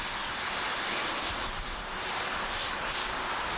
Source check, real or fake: real